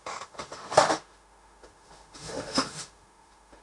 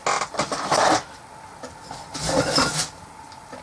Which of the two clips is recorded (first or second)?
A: second